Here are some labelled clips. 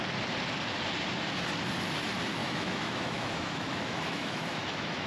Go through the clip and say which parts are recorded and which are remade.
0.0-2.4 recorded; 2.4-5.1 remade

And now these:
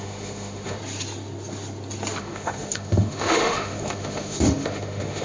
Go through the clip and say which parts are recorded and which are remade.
0.0-0.8 remade; 0.8-2.2 recorded; 2.2-5.2 remade

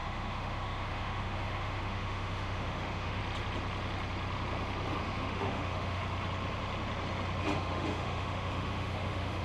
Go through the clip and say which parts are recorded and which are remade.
0.0-3.2 remade; 3.2-5.0 recorded; 5.0-6.0 remade; 6.0-7.4 recorded; 7.4-9.4 remade

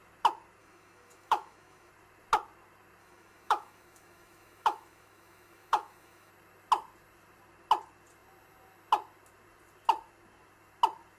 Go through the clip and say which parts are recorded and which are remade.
0.0-0.6 recorded; 0.6-1.9 remade; 1.9-3.0 recorded; 3.0-6.3 remade; 6.3-11.2 recorded

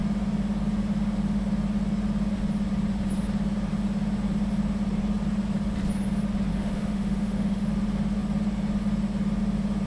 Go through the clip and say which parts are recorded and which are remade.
0.0-6.5 recorded; 6.5-7.7 remade; 7.7-9.9 recorded

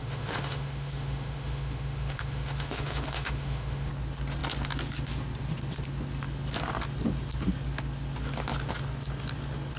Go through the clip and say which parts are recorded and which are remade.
0.0-3.9 remade; 3.9-9.8 recorded

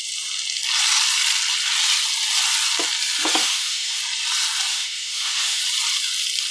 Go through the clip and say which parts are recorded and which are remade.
0.0-3.4 recorded; 3.4-4.0 remade; 4.0-4.7 recorded; 4.7-5.6 remade; 5.6-6.5 recorded